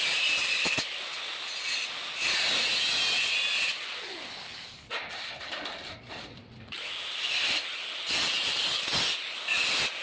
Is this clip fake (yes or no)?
no